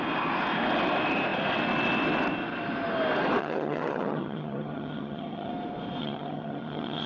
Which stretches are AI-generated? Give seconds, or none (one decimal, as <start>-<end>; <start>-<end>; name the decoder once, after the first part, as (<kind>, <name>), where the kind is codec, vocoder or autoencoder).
3.4-5.5 (vocoder, HiFi-GAN); 6.0-7.1